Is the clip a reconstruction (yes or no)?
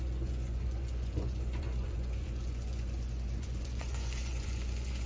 yes